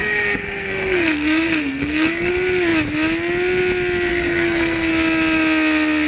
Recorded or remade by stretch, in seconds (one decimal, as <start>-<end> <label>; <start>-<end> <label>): 0.0-2.3 remade; 2.3-4.1 recorded; 4.1-4.9 remade; 4.9-6.1 recorded